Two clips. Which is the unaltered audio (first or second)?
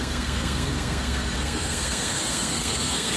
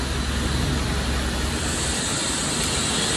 second